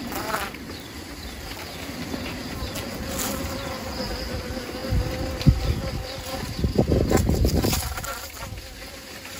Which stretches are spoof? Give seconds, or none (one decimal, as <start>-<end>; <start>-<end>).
none